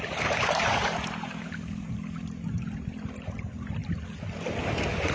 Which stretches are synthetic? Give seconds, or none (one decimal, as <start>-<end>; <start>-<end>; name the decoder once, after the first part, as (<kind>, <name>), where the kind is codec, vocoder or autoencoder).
0.0-3.8 (vocoder, BigVGAN v2)